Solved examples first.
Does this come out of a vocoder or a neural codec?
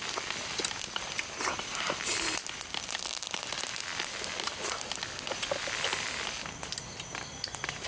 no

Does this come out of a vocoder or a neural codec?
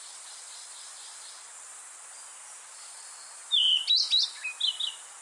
no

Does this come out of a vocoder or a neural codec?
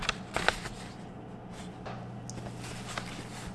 no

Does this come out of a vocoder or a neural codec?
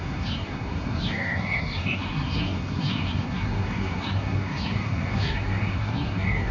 yes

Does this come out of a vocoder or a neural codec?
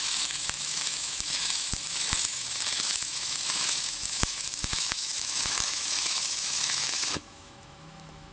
yes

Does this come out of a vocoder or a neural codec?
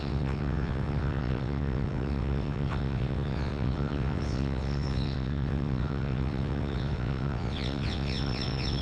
yes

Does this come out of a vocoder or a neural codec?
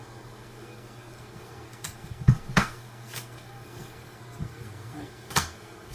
yes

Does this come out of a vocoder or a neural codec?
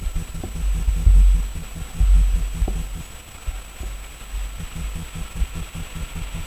no